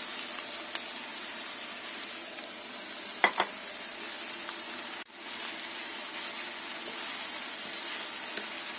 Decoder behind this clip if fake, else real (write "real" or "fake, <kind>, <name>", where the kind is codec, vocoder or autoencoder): real